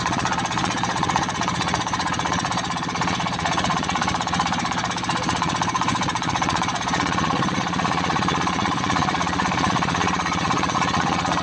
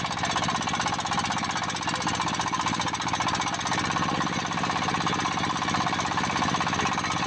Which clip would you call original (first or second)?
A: second